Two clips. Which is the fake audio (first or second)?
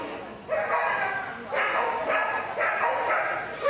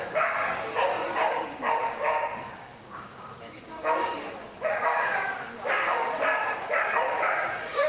second